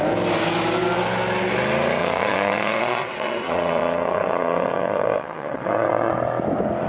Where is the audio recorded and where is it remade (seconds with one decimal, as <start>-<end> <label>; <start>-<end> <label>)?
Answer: 0.0-2.0 recorded; 2.0-6.1 remade; 6.1-6.9 recorded